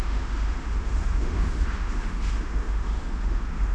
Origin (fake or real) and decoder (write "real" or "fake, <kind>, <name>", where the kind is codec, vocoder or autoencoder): fake, autoencoder, DAC-VAE